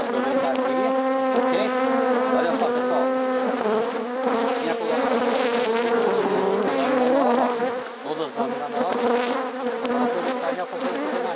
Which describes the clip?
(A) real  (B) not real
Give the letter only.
A